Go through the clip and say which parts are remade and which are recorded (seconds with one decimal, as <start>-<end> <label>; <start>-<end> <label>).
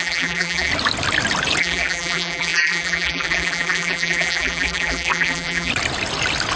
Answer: 0.0-0.7 remade; 0.7-1.6 recorded; 1.6-5.7 remade; 5.7-6.6 recorded